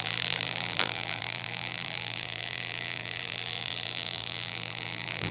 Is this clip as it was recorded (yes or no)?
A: no